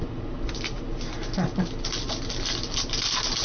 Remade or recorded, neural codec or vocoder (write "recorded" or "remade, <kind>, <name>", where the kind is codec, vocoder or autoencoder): recorded